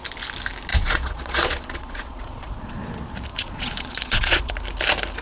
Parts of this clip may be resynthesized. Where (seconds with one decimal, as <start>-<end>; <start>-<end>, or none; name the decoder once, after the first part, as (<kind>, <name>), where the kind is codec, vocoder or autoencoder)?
0.7-2.8 (vocoder, Vocos); 3.3-4.5